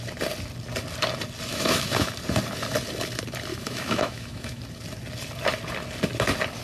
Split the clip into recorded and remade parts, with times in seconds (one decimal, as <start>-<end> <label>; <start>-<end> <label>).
0.0-1.5 recorded; 1.5-2.1 remade; 2.1-3.5 recorded; 3.5-4.6 remade; 4.6-6.6 recorded